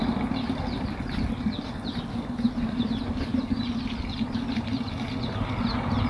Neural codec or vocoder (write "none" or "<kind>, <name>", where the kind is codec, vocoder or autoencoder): none